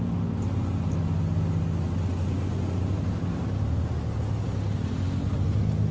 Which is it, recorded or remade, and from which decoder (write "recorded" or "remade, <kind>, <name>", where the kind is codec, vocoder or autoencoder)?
recorded